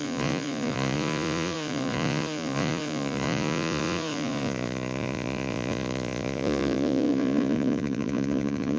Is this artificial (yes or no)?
yes